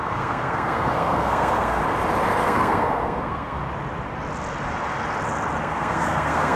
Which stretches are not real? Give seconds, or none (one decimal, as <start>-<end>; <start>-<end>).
0.0-1.8; 2.4-3.6; 5.6-6.6